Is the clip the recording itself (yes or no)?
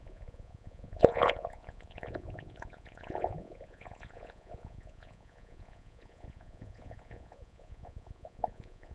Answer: no